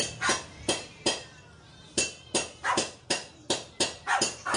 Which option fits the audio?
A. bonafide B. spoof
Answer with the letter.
A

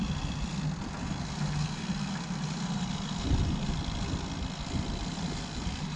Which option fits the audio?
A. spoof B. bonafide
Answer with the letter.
B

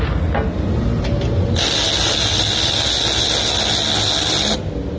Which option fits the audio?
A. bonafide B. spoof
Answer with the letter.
A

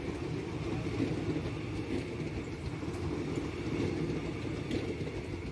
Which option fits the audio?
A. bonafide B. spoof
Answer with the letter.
A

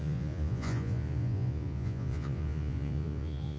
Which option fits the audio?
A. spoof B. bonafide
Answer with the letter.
A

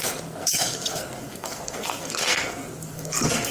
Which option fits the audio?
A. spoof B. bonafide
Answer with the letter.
A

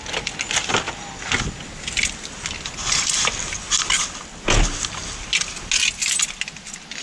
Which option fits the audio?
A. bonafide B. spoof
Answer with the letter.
A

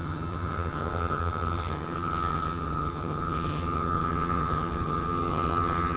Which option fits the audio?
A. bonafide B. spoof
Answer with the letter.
B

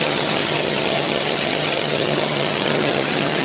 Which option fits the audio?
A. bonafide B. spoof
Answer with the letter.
B